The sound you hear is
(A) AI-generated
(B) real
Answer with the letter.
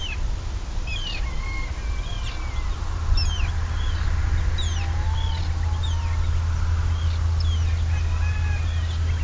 B